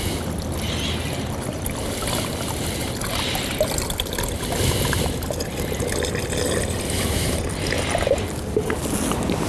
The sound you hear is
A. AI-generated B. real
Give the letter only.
B